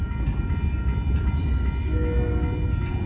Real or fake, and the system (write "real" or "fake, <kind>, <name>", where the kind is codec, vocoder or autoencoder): real